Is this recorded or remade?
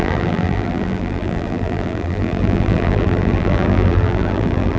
remade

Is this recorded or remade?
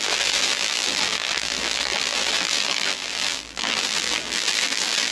remade